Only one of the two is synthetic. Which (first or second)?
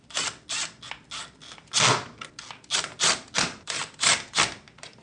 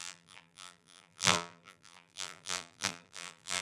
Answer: second